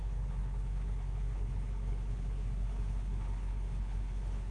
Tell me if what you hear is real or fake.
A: fake